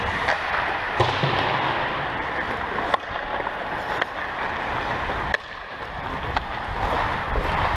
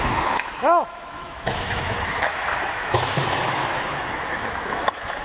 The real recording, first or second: first